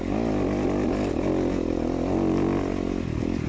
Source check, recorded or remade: recorded